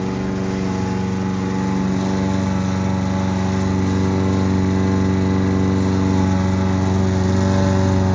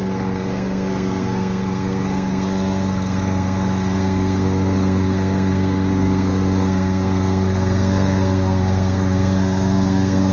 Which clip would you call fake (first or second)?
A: second